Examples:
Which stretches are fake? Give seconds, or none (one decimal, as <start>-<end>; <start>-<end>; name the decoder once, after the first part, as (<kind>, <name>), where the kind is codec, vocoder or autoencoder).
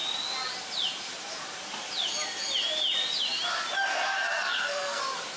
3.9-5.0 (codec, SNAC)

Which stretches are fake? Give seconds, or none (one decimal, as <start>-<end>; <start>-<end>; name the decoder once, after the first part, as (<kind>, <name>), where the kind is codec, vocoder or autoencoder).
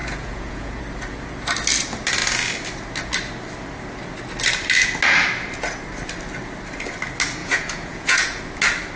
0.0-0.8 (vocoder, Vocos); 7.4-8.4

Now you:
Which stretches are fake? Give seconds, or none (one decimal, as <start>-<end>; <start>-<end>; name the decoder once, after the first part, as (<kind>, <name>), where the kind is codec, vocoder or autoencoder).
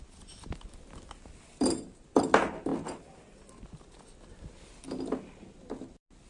none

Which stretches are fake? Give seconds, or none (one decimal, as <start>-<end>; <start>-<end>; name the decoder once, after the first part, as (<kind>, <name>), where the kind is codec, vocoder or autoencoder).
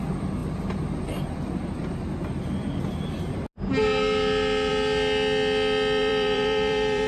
6.0-7.1 (vocoder, BigVGAN v2)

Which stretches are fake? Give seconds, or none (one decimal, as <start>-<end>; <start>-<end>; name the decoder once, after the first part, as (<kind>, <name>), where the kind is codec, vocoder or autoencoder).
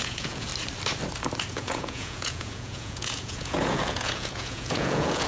0.0-0.5 (vocoder, Vocos); 1.5-5.3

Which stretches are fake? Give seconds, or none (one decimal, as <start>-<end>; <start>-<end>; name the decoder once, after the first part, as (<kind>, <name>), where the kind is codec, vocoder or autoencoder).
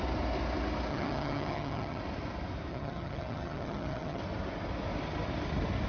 0.9-2.0 (vocoder, HiFi-GAN); 2.7-4.2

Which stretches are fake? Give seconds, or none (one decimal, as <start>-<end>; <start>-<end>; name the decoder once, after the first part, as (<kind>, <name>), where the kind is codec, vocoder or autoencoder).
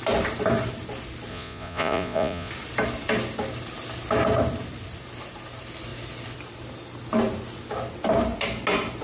1.3-2.5 (vocoder, Vocos)